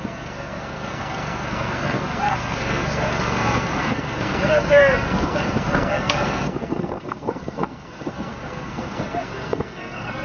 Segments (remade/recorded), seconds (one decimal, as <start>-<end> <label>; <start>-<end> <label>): 0.0-10.2 remade